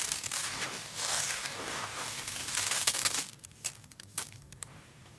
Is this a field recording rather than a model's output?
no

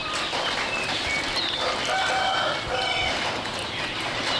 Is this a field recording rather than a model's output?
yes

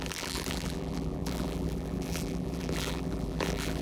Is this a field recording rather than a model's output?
no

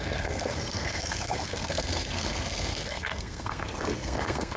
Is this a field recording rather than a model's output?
no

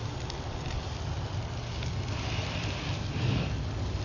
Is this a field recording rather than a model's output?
yes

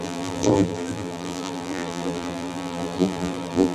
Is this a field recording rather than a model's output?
no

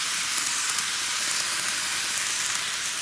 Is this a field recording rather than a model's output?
yes